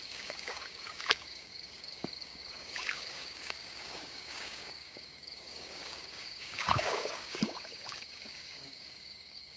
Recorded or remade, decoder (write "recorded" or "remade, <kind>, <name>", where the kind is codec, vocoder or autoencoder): remade, codec, DAC